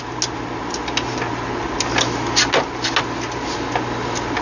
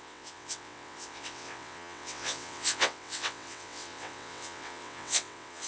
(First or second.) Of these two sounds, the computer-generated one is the second